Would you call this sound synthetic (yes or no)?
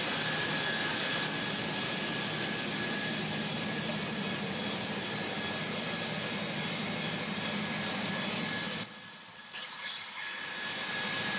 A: no